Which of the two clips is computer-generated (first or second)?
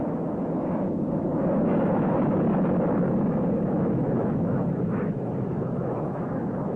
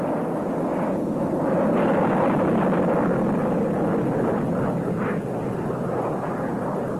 first